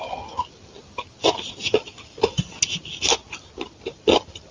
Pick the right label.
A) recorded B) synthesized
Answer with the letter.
A